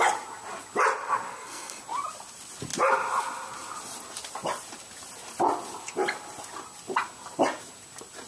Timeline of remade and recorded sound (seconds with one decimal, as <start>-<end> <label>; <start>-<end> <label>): 0.0-1.3 recorded; 1.3-1.8 remade; 1.8-8.3 recorded

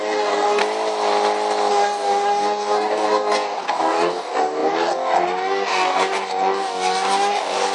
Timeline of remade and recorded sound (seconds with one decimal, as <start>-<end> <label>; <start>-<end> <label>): 0.0-0.6 remade; 0.6-1.7 recorded; 1.7-7.7 remade

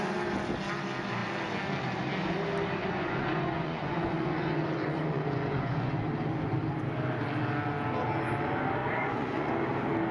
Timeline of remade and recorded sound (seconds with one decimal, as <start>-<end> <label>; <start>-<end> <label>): 0.0-2.8 recorded; 2.8-6.0 remade; 6.0-8.8 recorded; 8.8-9.5 remade; 9.5-10.1 recorded